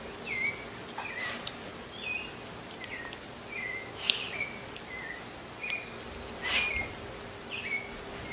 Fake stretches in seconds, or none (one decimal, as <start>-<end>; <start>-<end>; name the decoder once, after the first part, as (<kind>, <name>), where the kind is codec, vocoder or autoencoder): none